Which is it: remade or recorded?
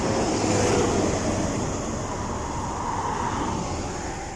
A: recorded